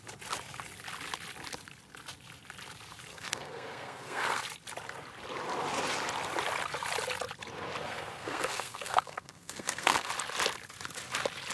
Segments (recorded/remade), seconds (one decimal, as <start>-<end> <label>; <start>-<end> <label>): 0.0-3.1 recorded; 3.1-4.4 remade; 4.4-7.8 recorded; 7.8-10.1 remade; 10.1-11.5 recorded